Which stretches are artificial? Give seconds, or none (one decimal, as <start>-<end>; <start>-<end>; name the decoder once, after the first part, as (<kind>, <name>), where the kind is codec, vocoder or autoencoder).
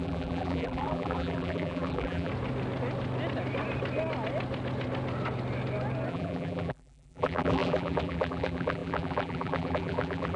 0.0-2.3 (vocoder, BigVGAN v2); 6.1-10.4